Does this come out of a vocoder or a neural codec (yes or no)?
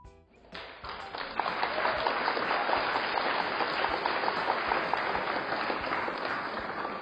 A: no